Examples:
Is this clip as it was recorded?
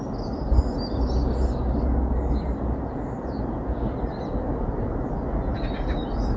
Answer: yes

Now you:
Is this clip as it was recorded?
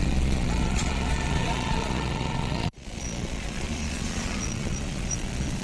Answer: no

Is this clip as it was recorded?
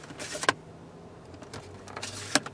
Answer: yes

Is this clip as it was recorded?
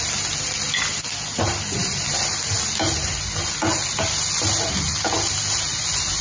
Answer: yes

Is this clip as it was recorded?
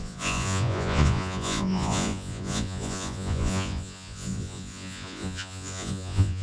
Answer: no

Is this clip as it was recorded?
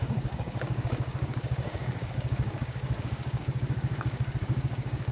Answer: no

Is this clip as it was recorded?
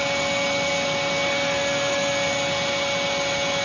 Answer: yes